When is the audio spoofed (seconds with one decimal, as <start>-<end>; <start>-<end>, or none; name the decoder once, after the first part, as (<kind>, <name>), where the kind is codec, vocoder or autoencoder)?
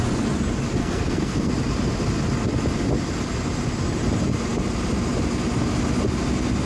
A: 0.8-1.5 (codec, SNAC)